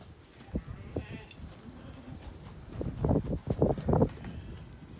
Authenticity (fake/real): real